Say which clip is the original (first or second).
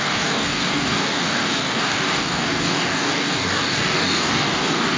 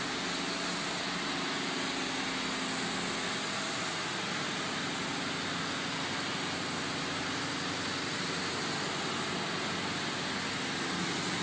second